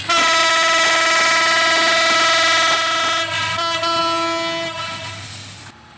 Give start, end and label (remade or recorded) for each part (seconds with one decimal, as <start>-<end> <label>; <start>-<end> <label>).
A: 0.0-6.0 recorded